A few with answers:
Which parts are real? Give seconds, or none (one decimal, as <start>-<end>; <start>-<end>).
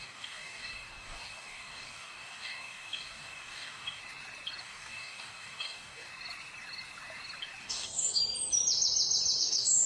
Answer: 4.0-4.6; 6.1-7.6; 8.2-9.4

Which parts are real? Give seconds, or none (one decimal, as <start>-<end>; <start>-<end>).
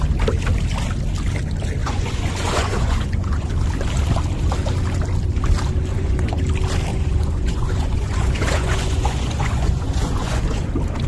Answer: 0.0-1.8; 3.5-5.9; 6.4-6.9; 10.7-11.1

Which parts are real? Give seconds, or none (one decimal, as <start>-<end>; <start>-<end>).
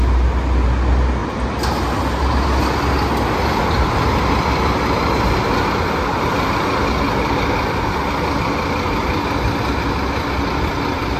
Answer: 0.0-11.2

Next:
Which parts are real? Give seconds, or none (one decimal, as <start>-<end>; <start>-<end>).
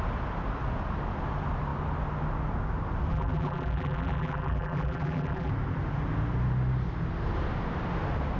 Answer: 0.0-3.1; 5.5-8.4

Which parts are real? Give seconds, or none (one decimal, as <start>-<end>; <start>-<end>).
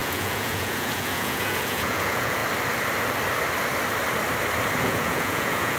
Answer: 2.4-4.8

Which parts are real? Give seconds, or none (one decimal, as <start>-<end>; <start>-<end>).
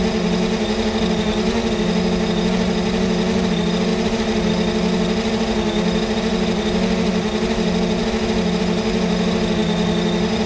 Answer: 0.0-10.5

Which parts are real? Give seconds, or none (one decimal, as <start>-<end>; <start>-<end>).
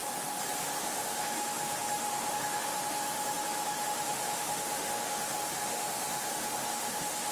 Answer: 0.0-0.8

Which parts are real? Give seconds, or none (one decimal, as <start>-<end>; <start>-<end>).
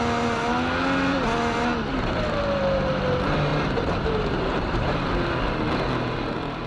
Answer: 0.0-3.5; 5.1-6.7